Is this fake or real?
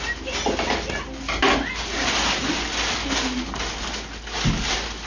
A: real